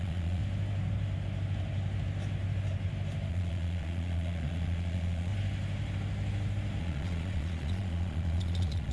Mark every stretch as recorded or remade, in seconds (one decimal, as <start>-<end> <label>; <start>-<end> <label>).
0.0-0.4 remade; 0.4-3.3 recorded; 3.3-5.3 remade; 5.3-6.8 recorded; 6.8-8.9 remade